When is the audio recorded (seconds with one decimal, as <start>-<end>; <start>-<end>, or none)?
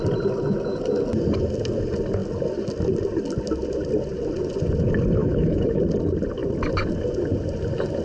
0.0-5.2; 5.8-8.0